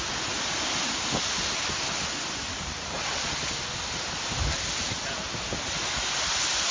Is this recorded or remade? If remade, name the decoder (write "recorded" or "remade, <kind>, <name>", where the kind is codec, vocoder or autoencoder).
recorded